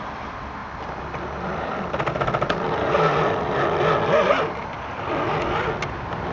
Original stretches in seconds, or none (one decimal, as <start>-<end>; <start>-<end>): 0.0-6.3